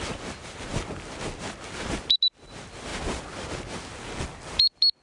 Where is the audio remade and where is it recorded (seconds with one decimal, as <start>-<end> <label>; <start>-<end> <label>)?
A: 0.0-5.0 recorded